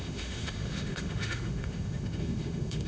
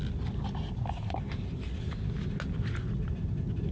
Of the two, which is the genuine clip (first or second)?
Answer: second